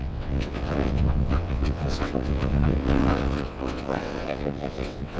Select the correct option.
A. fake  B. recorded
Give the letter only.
A